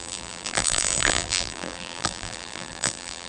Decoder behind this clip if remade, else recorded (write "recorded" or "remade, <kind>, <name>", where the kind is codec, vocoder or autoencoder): remade, vocoder, BigVGAN v2